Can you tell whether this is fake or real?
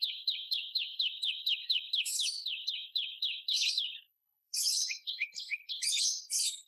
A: fake